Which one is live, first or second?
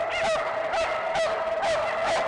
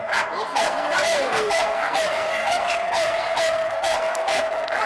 first